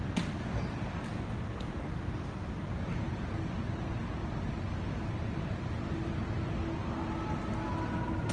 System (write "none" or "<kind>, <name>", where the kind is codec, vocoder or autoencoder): none